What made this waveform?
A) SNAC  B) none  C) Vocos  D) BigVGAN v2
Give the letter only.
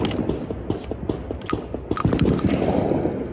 B